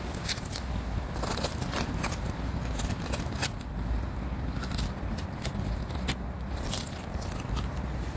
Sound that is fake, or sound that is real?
real